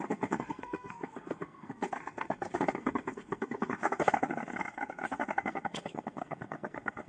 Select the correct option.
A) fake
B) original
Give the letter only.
A